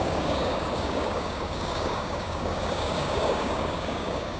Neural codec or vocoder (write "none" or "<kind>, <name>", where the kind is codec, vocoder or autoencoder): codec, DAC